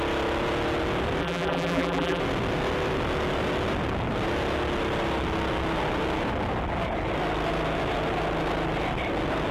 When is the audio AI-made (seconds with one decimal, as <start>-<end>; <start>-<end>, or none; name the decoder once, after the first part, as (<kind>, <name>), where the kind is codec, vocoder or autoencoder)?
1.2-2.2 (vocoder, BigVGAN v2)